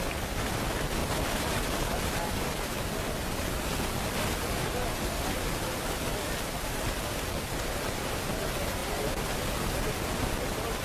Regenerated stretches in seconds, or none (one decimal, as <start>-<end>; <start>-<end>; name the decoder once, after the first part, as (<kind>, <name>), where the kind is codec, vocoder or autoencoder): none